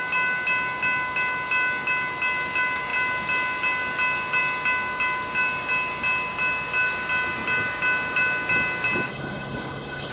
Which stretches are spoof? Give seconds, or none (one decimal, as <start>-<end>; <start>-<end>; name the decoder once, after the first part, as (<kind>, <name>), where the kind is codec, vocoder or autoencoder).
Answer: 9.1-10.1 (codec, HILCodec)